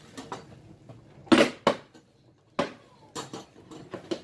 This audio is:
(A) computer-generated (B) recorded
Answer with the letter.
B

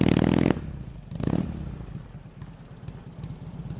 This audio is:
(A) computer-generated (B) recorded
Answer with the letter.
B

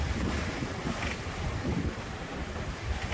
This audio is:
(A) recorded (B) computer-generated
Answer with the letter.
A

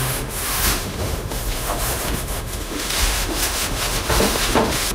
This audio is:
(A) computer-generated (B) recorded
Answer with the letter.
A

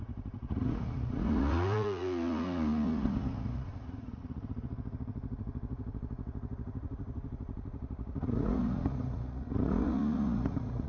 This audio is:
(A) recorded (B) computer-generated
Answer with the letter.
B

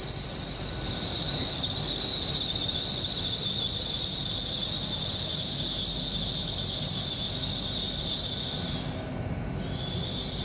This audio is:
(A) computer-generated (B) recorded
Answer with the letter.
B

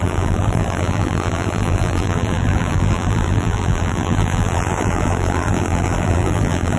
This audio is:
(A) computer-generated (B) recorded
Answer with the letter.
A